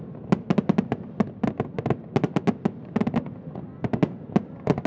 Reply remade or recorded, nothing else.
recorded